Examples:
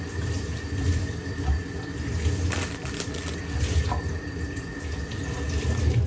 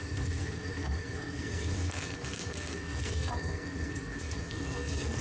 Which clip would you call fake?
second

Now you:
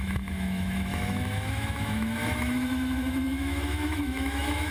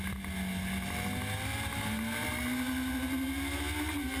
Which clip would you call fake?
first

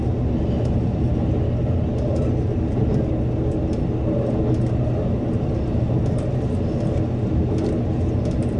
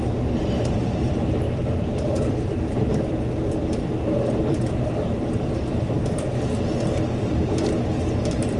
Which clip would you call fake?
second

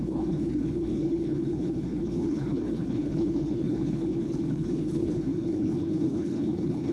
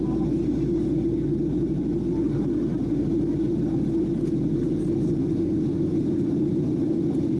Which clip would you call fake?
first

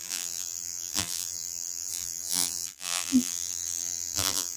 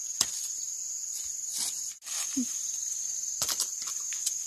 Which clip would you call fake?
first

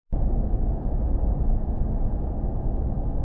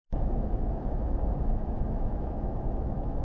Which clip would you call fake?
second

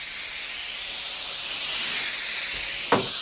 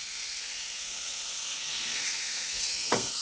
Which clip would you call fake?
second